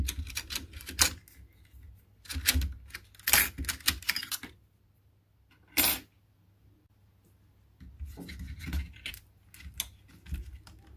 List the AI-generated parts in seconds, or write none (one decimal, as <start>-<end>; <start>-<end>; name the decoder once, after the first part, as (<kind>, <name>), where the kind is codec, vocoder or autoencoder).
none